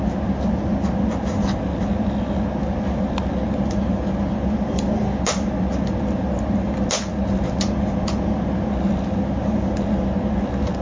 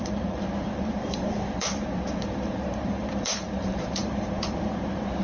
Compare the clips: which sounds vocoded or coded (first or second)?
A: second